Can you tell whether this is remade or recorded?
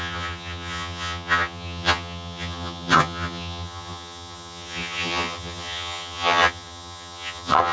remade